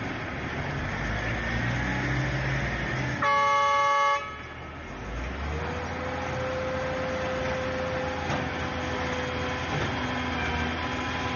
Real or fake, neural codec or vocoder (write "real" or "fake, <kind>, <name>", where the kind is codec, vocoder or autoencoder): real